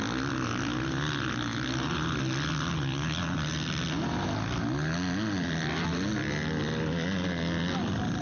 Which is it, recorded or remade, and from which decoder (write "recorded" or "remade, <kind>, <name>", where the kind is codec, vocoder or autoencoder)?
recorded